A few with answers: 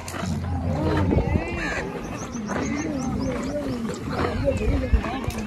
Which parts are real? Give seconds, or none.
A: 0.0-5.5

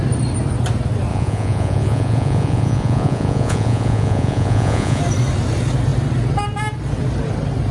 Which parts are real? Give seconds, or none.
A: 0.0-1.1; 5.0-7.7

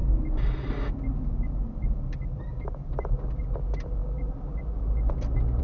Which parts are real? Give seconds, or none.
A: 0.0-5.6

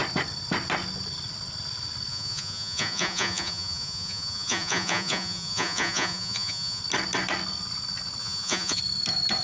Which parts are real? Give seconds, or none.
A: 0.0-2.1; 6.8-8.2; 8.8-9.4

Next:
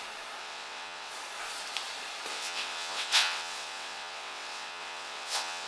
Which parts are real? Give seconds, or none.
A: 0.0-0.4; 1.1-2.3

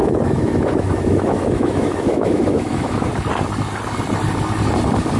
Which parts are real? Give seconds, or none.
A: 3.1-5.2